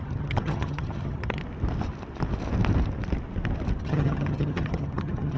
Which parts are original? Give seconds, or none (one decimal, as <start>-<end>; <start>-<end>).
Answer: 1.4-3.8